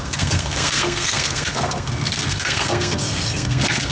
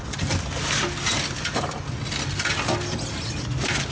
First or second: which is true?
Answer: second